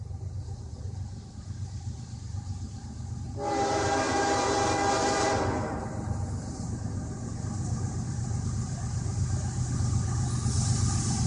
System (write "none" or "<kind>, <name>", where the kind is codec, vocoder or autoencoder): vocoder, BigVGAN v2